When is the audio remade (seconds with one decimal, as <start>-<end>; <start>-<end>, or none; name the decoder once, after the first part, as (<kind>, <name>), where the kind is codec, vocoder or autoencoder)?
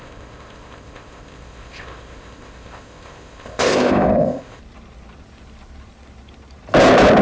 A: 0.0-4.6 (codec, ZipCodec)